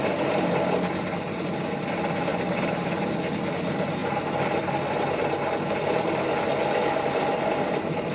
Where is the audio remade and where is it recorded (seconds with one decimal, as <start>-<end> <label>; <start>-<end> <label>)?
0.0-2.3 recorded; 2.3-3.0 remade; 3.0-8.1 recorded